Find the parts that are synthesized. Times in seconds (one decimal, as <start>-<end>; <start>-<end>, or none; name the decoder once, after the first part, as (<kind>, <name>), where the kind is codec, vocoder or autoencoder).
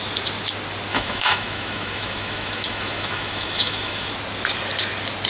0.9-4.1 (autoencoder, DAC-VAE)